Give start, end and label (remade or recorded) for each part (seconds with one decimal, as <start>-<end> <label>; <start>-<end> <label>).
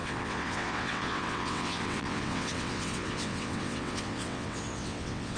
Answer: 0.0-5.4 remade